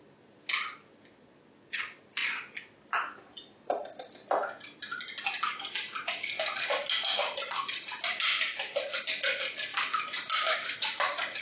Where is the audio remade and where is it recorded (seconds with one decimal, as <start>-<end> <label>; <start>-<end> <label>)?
0.0-8.3 recorded; 8.3-9.0 remade; 9.0-9.7 recorded; 9.7-11.4 remade